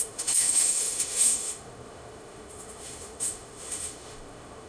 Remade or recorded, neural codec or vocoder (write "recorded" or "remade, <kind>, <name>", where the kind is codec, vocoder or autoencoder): remade, autoencoder, DAC-VAE